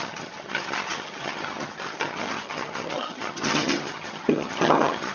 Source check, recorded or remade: remade